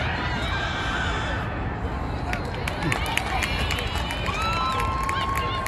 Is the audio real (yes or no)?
yes